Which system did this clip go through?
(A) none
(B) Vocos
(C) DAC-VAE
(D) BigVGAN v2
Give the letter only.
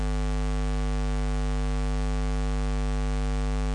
A